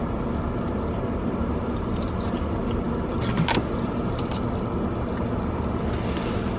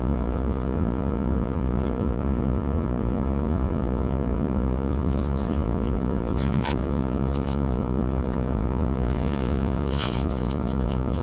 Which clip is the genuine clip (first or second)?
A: first